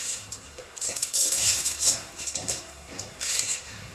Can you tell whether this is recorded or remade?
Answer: remade